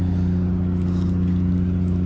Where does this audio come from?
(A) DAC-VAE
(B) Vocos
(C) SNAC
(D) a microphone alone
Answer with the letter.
D